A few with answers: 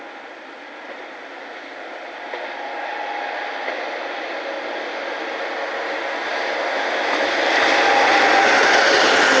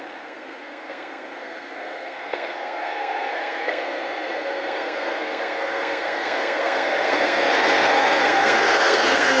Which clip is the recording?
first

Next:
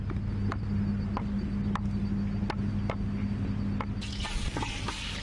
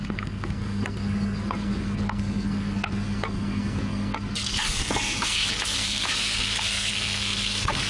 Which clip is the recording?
first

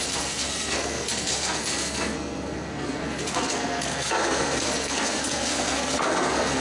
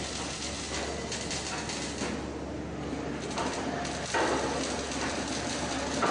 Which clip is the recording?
second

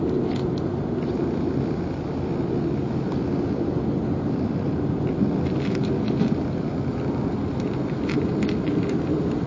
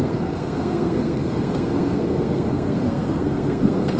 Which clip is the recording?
first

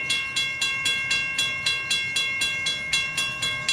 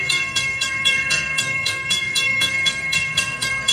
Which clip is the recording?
first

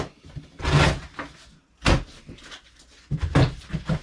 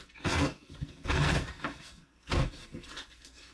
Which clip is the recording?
first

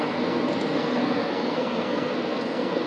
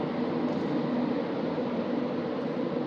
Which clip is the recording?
second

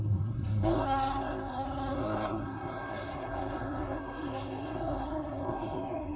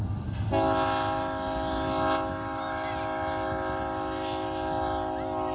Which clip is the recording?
second